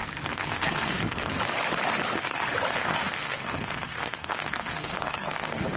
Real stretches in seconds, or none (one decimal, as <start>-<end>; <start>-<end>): 1.4-2.8